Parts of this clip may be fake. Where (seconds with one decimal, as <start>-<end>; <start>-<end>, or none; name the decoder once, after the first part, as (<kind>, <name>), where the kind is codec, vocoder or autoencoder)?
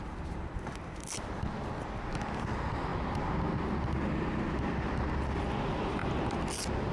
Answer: none